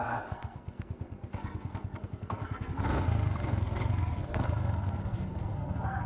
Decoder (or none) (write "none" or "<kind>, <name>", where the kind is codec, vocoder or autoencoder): codec, SNAC